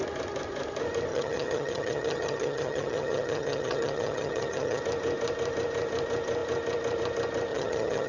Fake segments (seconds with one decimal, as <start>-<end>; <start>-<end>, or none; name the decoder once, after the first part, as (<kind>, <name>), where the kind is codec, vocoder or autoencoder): 1.1-4.8 (vocoder, HiFi-GAN); 7.5-8.1